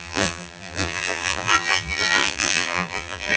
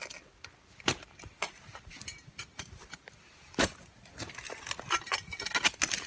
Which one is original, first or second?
second